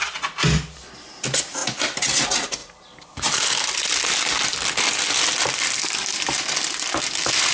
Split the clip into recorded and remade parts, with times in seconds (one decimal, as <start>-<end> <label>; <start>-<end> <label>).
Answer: 0.0-7.5 recorded

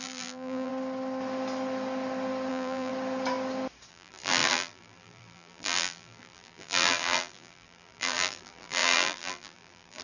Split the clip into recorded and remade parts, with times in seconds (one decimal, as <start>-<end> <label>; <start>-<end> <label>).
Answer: 0.0-0.7 remade; 0.7-2.5 recorded; 2.5-2.9 remade; 2.9-3.9 recorded; 3.9-10.0 remade

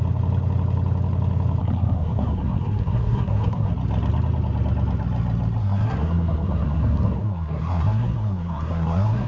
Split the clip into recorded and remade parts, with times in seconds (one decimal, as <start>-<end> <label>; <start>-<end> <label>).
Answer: 0.0-1.6 recorded; 1.6-3.7 remade; 3.7-5.6 recorded; 5.6-9.3 remade

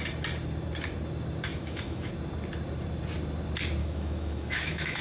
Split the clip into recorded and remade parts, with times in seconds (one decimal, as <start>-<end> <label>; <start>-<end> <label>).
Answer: 0.0-1.5 recorded; 1.5-2.1 remade; 2.1-3.8 recorded; 3.8-5.0 remade

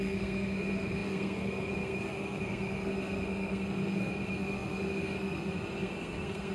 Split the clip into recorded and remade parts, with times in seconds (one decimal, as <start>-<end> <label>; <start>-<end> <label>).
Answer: 0.0-6.5 remade

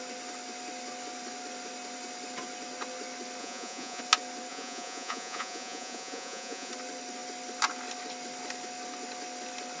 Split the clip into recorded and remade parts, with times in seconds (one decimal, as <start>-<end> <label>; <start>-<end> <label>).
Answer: 0.0-3.4 recorded; 3.4-4.0 remade; 4.0-4.5 recorded; 4.5-6.7 remade; 6.7-9.8 recorded

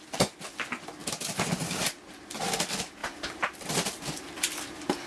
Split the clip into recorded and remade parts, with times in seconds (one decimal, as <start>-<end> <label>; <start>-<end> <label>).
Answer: 0.0-5.1 recorded

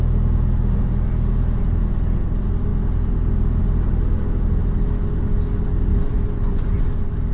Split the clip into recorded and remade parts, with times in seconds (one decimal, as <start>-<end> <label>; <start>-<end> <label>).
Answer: 0.0-5.9 recorded; 5.9-6.8 remade; 6.8-7.3 recorded